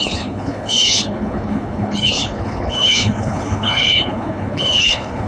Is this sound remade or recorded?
remade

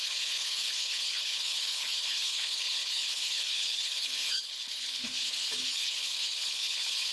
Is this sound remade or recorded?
remade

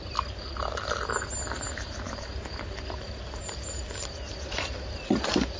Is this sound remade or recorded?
recorded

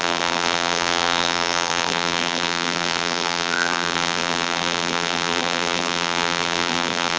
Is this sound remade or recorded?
remade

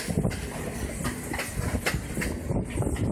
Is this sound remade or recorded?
recorded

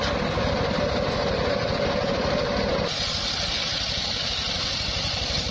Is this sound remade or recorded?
recorded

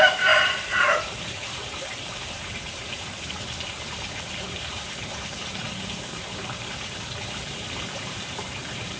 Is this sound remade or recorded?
remade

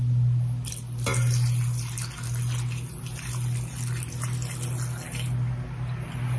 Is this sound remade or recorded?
recorded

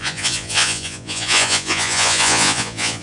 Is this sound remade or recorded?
remade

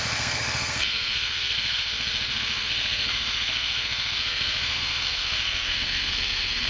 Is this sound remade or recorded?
remade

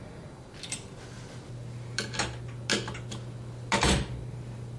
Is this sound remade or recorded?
recorded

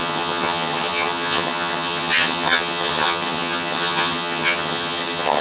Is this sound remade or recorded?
remade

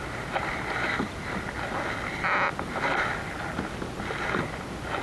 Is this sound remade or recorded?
recorded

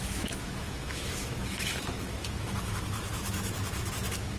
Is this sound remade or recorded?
remade